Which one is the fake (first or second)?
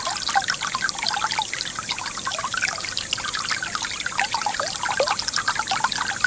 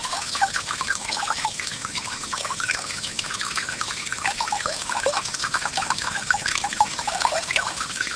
second